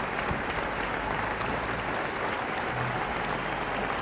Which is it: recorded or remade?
recorded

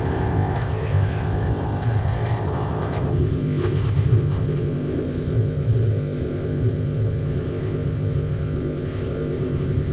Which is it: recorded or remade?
remade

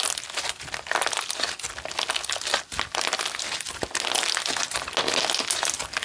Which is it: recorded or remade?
recorded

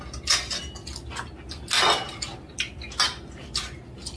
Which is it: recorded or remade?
recorded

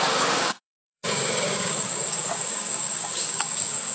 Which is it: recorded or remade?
remade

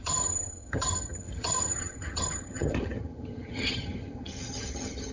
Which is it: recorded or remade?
remade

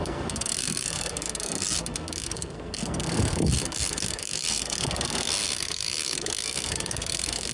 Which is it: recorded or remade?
remade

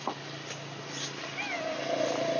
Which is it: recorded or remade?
recorded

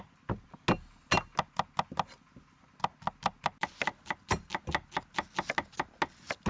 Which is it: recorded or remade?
recorded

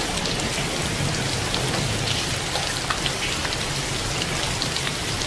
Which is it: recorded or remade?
recorded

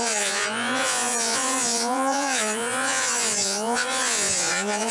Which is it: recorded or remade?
remade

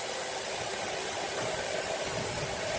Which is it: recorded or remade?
recorded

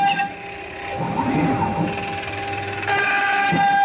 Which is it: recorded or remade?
recorded